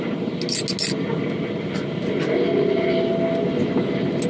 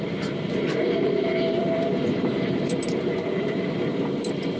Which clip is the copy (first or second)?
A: second